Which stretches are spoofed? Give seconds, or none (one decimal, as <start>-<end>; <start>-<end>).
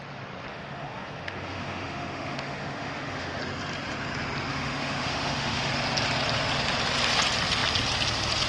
0.5-3.4; 4.5-5.7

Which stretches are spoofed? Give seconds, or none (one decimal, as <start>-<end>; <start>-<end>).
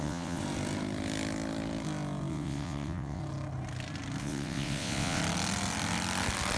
0.0-0.4; 2.3-3.2; 4.2-5.2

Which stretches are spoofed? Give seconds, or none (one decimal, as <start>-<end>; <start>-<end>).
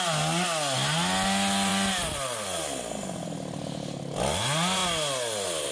1.7-3.1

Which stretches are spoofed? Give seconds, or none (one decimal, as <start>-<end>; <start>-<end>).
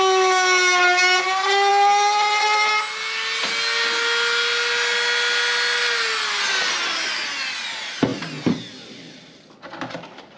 none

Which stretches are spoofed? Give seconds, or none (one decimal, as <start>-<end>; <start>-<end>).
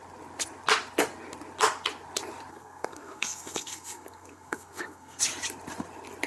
2.5-5.2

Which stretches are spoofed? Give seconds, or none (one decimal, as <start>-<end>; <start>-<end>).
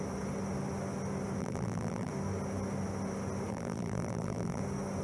1.4-2.1; 3.5-4.6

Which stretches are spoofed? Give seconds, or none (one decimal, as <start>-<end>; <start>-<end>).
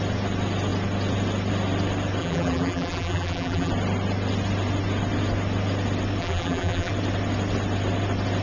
2.2-3.7; 6.2-6.9